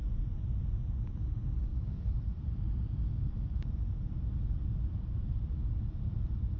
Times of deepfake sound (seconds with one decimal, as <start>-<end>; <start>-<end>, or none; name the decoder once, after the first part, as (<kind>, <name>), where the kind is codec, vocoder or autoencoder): 1.7-5.7 (vocoder, BigVGAN v2)